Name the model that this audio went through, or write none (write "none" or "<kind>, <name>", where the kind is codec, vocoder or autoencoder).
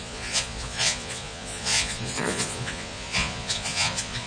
vocoder, Vocos